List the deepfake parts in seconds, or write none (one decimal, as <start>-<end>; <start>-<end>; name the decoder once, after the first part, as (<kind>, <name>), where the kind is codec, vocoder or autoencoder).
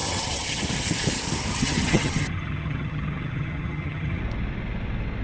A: 0.0-0.6 (vocoder, HiFi-GAN); 1.5-4.2